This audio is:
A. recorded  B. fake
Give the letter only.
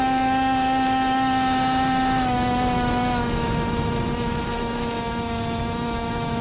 B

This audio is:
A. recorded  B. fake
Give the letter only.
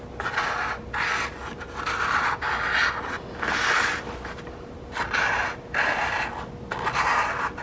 A